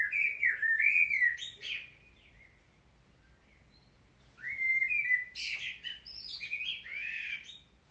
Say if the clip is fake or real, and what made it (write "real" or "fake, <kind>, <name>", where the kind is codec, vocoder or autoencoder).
real